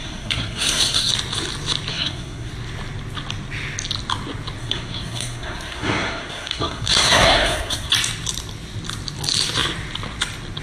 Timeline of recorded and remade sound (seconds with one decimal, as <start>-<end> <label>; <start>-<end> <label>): 0.0-1.1 remade; 1.1-1.9 recorded; 1.9-2.5 remade; 2.5-4.6 recorded; 4.6-7.9 remade; 7.9-10.6 recorded